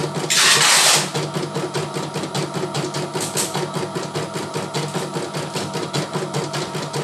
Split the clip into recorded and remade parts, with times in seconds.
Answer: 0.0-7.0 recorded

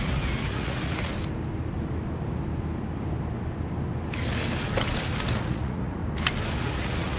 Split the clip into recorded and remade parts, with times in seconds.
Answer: 0.0-1.1 remade; 1.1-5.4 recorded; 5.4-6.0 remade; 6.0-6.6 recorded; 6.6-7.2 remade

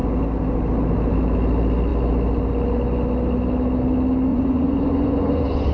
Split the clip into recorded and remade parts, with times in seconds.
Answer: 0.0-4.3 recorded; 4.3-5.7 remade

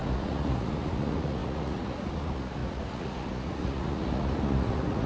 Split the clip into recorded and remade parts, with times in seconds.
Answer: 0.0-5.1 remade

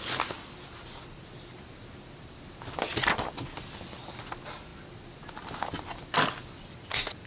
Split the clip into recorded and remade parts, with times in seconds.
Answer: 0.0-7.3 recorded